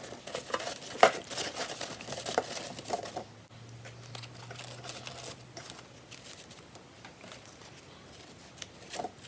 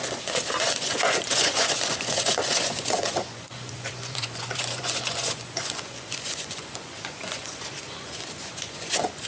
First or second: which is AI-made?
second